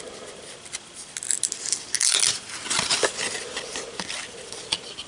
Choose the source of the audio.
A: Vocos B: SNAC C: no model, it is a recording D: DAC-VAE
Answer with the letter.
C